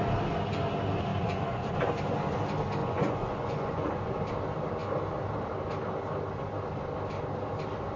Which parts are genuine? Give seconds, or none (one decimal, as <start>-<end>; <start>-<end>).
0.0-1.1; 1.7-2.8; 4.0-8.0